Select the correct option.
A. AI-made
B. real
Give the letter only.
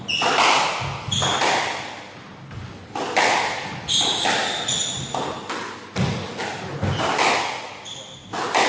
B